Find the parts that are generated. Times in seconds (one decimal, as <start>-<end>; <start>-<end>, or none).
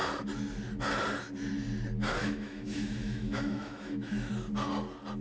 2.2-4.3